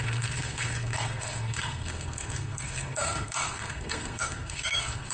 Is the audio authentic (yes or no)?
no